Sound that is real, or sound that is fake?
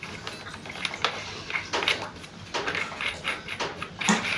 real